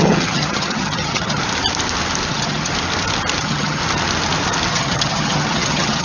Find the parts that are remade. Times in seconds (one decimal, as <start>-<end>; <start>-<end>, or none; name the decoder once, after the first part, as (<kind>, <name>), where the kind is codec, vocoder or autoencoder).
0.0-1.4 (vocoder, HiFi-GAN); 2.3-2.7; 3.4-3.8; 4.7-6.0